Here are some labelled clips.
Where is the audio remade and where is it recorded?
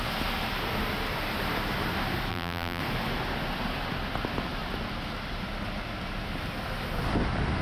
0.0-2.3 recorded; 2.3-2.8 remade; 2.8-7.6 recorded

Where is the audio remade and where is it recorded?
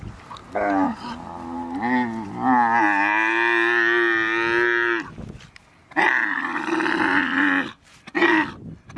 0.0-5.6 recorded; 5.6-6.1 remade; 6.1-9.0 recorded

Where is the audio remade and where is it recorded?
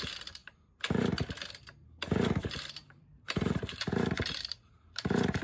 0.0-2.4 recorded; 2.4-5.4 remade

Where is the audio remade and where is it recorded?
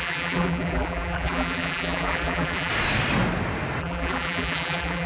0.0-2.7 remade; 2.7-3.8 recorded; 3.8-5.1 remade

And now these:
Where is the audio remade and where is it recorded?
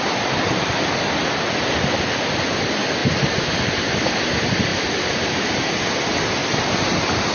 0.0-3.0 recorded; 3.0-3.8 remade; 3.8-4.7 recorded; 4.7-5.5 remade; 5.5-6.4 recorded; 6.4-7.3 remade